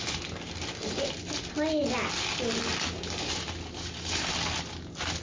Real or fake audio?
real